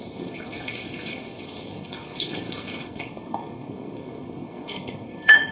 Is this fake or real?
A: fake